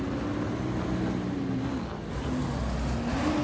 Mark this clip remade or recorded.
recorded